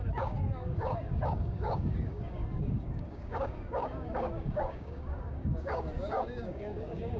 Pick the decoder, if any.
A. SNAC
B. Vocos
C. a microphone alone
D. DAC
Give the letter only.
D